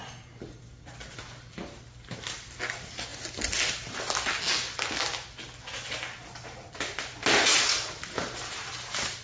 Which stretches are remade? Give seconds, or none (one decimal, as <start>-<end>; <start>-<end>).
none